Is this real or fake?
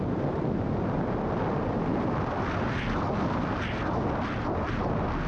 real